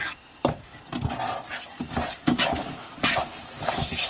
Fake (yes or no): no